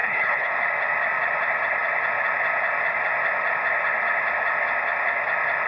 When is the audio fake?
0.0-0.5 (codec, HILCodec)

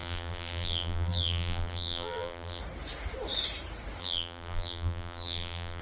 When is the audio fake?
0.0-2.6 (vocoder, BigVGAN v2); 4.0-5.8

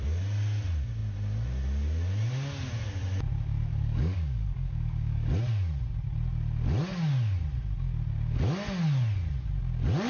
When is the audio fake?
3.7-5.3 (codec, DAC)

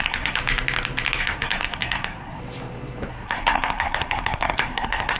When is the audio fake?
0.0-0.4 (codec, SNAC); 1.2-2.4; 3.1-5.2

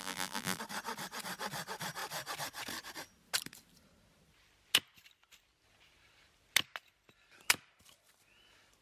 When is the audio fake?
0.0-0.6 (vocoder, BigVGAN v2)

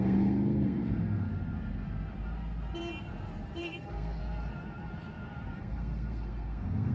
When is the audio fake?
0.0-1.3 (codec, SNAC); 3.6-4.2; 5.6-6.9

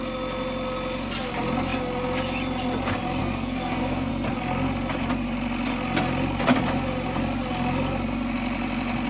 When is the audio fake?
3.2-4.1 (codec, SNAC)

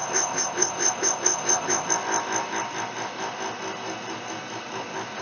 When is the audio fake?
0.0-1.9 (codec, ZipCodec)